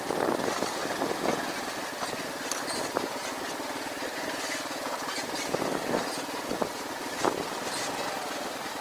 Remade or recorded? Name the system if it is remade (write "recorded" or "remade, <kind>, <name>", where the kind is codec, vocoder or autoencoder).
recorded